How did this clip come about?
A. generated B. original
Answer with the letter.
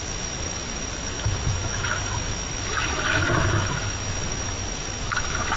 A